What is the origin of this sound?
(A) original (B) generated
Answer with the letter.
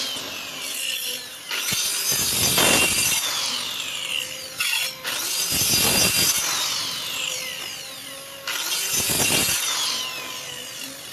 A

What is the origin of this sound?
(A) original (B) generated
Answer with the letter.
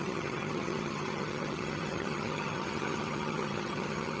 B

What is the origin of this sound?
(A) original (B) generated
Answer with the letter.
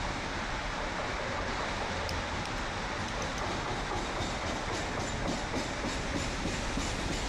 A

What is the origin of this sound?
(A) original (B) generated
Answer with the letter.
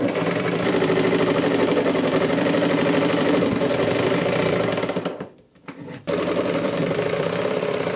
B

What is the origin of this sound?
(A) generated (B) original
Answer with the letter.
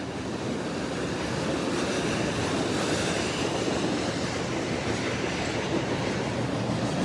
B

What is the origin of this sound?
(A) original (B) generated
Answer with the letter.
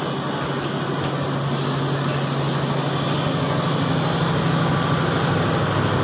A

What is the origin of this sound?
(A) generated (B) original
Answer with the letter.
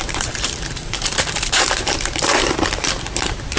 A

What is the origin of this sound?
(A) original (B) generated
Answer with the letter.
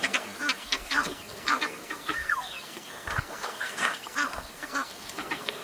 B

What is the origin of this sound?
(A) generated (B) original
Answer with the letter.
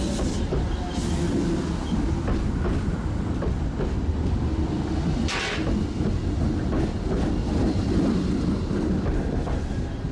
B